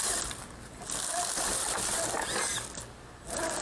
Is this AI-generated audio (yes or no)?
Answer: no